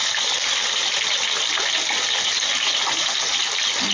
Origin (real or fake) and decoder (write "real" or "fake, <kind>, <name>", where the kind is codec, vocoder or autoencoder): real